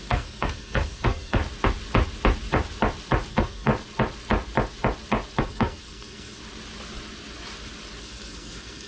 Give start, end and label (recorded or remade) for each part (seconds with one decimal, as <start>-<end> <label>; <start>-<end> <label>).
0.0-1.4 remade; 1.4-3.3 recorded; 3.3-3.7 remade; 3.7-5.4 recorded; 5.4-6.4 remade; 6.4-8.0 recorded; 8.0-8.9 remade